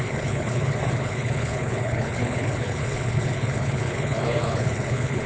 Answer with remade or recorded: remade